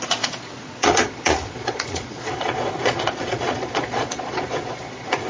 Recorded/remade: remade